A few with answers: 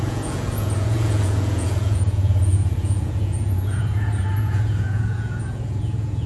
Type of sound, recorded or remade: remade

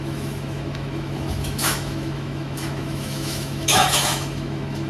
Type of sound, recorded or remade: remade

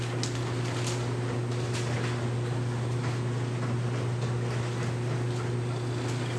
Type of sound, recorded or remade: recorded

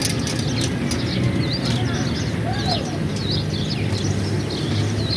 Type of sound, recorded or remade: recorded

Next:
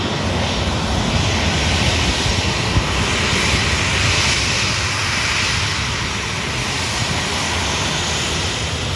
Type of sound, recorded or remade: recorded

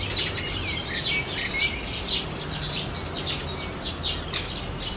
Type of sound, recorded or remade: recorded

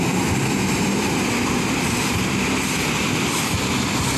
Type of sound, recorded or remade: remade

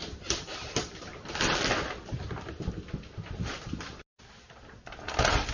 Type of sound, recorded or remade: recorded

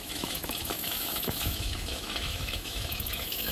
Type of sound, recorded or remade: remade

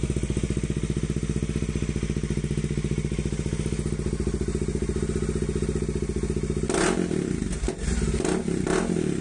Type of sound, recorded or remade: recorded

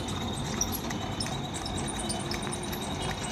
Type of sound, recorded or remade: recorded